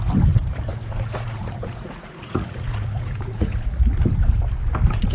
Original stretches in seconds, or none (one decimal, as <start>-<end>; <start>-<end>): 0.0-0.7; 3.8-5.1